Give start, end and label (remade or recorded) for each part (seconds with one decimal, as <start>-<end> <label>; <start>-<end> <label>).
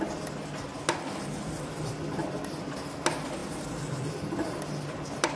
0.0-5.4 recorded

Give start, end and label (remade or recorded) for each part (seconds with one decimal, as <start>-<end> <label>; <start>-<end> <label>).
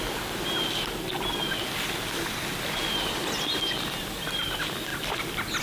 0.0-5.6 recorded